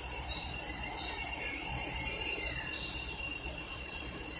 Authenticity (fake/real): fake